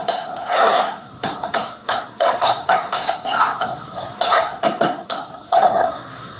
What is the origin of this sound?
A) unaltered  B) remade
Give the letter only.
B